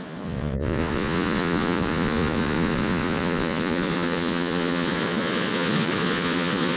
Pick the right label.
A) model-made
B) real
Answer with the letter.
A